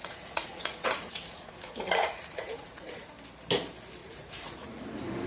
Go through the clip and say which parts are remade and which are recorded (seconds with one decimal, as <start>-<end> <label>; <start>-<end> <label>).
0.0-3.1 remade; 3.1-4.0 recorded; 4.0-4.8 remade; 4.8-5.3 recorded